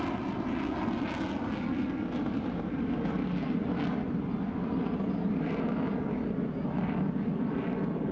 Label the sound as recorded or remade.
recorded